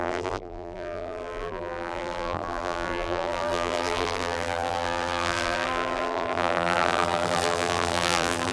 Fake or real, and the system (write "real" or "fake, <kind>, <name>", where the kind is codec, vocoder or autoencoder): fake, vocoder, BigVGAN v2